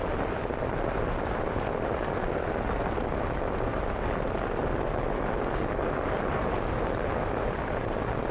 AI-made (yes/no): no